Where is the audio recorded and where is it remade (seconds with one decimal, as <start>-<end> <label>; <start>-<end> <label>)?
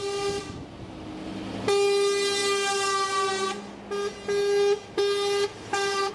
0.0-6.1 recorded